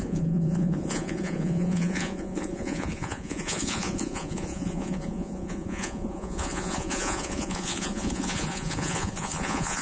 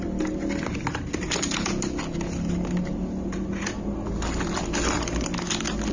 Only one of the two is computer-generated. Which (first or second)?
first